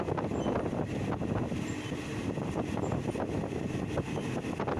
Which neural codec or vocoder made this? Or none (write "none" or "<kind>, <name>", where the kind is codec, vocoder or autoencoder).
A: none